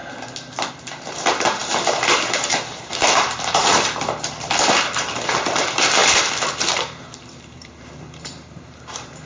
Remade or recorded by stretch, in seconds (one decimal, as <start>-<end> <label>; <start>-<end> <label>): 0.0-0.7 recorded; 0.7-9.3 remade